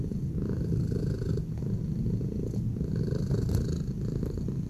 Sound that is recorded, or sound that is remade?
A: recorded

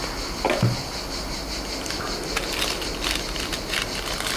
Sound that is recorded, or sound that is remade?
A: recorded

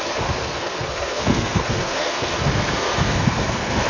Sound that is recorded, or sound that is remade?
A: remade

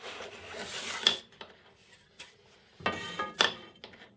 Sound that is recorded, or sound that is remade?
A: recorded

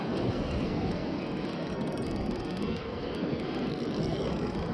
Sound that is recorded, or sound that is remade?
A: remade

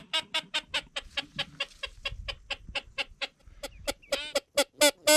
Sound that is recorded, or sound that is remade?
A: recorded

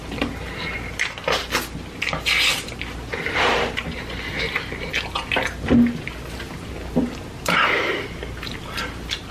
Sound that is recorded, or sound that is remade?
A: recorded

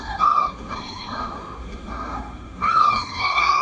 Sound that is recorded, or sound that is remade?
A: remade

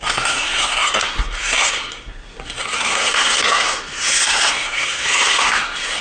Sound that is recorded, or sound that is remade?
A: remade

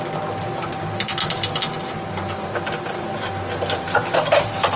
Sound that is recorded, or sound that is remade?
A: recorded